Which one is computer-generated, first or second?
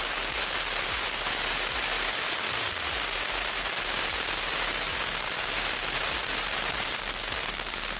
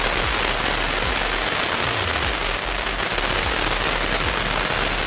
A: first